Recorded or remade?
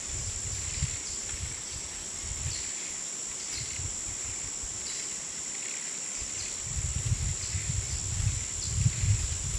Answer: recorded